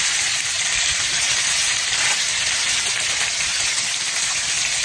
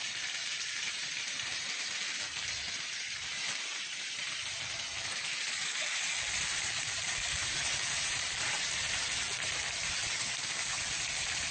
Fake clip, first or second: second